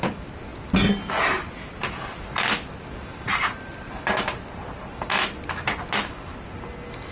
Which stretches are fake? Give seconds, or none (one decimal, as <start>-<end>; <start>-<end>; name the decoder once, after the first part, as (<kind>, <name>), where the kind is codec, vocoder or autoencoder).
none